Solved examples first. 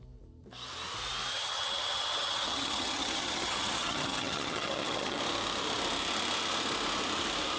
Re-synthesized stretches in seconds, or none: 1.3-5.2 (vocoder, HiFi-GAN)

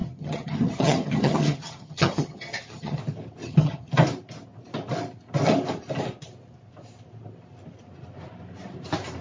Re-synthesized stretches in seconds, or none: 0.0-3.0 (vocoder, HiFi-GAN); 3.4-3.9

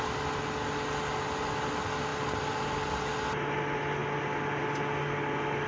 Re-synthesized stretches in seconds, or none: none

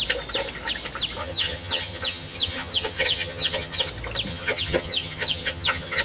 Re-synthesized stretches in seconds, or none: 1.2-3.9 (vocoder, HiFi-GAN); 4.3-6.0

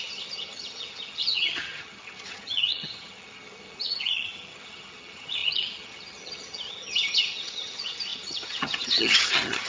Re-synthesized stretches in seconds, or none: 0.0-9.7 (vocoder, HiFi-GAN)

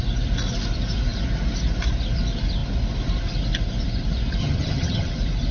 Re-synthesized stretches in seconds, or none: 4.4-5.1 (vocoder, HiFi-GAN)

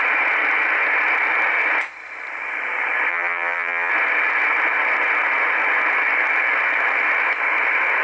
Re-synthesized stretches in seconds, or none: 3.1-3.9 (vocoder, HiFi-GAN)